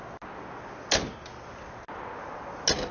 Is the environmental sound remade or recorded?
recorded